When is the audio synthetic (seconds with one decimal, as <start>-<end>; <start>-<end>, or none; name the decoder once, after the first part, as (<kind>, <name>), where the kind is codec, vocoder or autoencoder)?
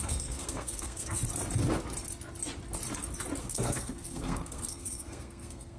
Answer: 0.0-1.2 (codec, SNAC); 3.4-5.8